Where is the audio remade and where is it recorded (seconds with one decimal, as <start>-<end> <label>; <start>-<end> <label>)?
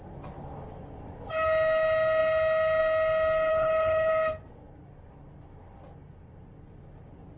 0.0-3.5 recorded; 3.5-4.1 remade; 4.1-7.4 recorded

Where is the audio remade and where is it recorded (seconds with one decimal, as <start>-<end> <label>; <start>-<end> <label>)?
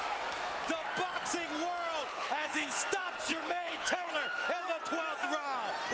0.0-2.1 recorded; 2.1-2.8 remade; 2.8-3.3 recorded; 3.3-4.1 remade; 4.1-5.9 recorded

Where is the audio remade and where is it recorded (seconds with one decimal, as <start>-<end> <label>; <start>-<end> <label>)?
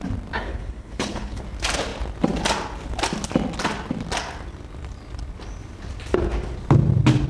0.0-0.5 recorded; 0.5-1.4 remade; 1.4-7.3 recorded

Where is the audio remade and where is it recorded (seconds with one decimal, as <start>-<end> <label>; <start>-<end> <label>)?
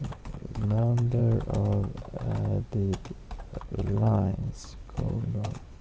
0.0-1.2 remade; 1.2-3.6 recorded; 3.6-5.8 remade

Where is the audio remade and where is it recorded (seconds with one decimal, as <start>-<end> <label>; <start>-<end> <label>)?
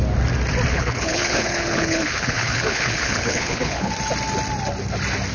0.0-0.7 recorded; 0.7-3.9 remade; 3.9-5.3 recorded